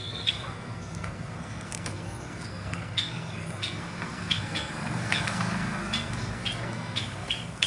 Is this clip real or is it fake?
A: fake